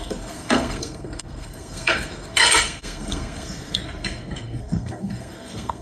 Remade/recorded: remade